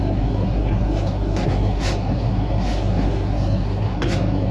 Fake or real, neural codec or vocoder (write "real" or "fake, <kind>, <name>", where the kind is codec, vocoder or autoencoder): fake, codec, SNAC